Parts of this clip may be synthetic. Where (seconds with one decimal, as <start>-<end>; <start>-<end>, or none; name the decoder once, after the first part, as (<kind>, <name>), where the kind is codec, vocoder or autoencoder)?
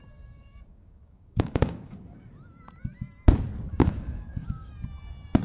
0.0-2.0 (codec, DAC); 3.7-4.7